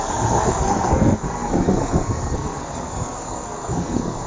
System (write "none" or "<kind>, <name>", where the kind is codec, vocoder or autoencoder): codec, SNAC